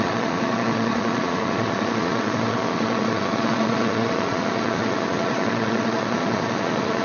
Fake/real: fake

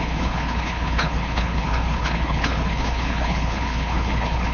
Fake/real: fake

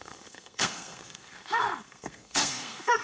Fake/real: fake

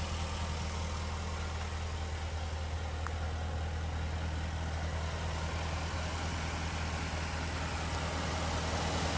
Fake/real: real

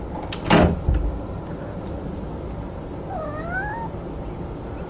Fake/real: real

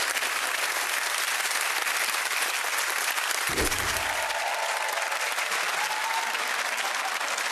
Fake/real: real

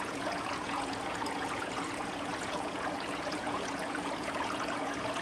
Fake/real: fake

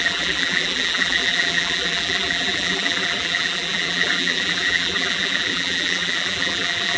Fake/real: fake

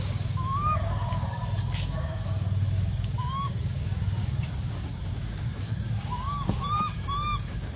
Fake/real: fake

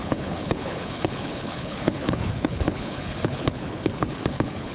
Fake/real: fake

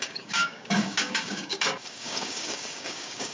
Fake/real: fake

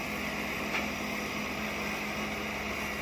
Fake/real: fake